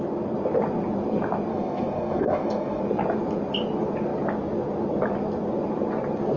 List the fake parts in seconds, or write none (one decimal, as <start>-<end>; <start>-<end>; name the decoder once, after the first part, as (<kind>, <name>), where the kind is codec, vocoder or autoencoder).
1.5-2.8 (codec, SNAC)